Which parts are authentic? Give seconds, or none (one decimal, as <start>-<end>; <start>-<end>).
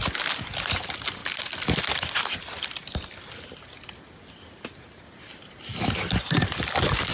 0.0-7.1